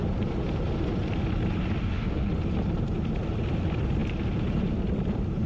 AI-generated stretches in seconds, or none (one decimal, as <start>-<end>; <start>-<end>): 1.8-2.3